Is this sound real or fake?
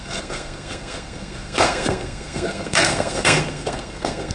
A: fake